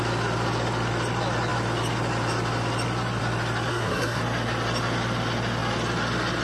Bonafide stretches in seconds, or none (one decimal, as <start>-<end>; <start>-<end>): 0.0-3.7; 4.2-6.4